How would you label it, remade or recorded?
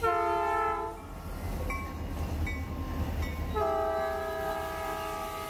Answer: recorded